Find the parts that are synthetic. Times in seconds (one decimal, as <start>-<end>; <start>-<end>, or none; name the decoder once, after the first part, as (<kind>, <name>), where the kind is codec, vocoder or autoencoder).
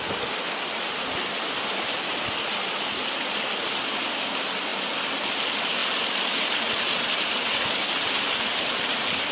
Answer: none